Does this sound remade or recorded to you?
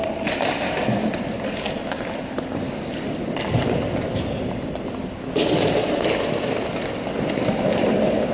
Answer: recorded